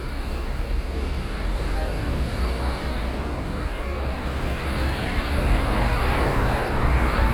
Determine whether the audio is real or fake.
fake